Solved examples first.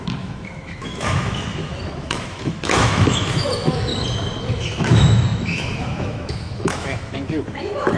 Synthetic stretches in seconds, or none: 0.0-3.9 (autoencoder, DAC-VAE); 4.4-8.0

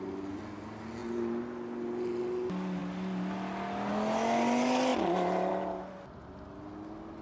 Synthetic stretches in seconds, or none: none

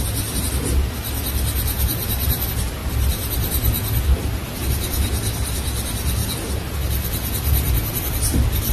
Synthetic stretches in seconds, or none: none

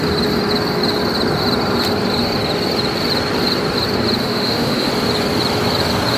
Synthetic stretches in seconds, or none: 4.2-4.9 (autoencoder, DAC-VAE)

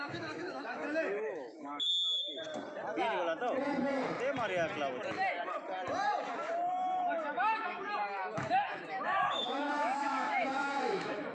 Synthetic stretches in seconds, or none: 0.0-1.9 (autoencoder, DAC-VAE); 6.7-11.3